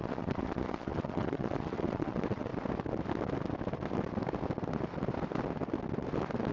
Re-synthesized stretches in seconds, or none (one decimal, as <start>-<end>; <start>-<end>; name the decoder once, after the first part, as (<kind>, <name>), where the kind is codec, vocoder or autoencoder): 0.0-2.5 (vocoder, Vocos)